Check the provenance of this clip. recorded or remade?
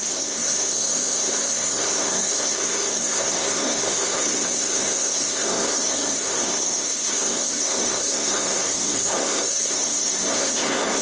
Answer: remade